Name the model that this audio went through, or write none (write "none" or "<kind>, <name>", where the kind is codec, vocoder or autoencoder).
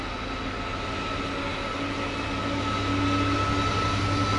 none